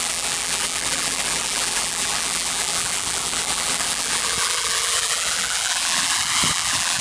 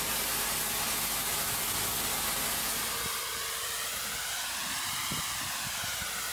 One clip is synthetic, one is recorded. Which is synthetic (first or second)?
first